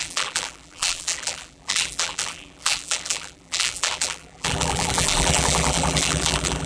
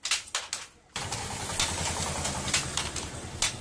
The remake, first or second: first